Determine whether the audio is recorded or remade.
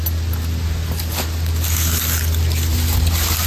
recorded